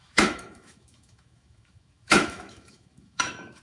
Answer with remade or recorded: remade